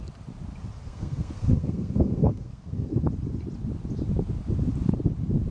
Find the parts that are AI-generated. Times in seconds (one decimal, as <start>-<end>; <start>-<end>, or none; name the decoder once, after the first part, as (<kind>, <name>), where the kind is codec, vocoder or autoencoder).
0.8-3.1 (codec, SNAC)